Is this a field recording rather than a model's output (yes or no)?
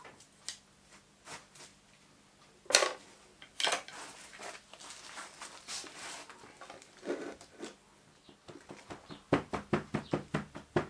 yes